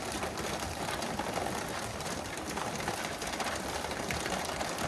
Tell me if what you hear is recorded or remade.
remade